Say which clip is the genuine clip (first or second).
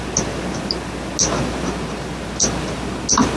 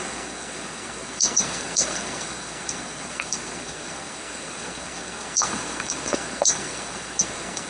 first